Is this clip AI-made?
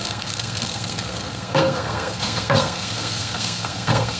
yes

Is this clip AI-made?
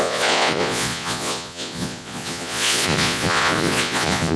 yes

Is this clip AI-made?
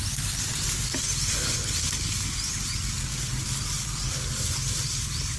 no